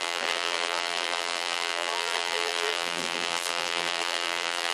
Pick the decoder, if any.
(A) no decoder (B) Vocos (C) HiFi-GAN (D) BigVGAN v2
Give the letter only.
D